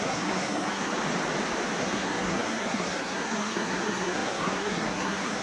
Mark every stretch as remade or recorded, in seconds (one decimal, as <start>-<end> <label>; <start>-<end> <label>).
0.0-0.9 remade; 0.9-1.8 recorded; 1.8-5.4 remade